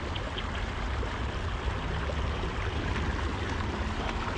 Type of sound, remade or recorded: recorded